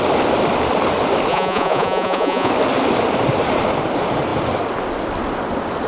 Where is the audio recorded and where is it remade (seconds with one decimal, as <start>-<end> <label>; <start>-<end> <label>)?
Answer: 0.0-1.3 recorded; 1.3-2.5 remade; 2.5-5.9 recorded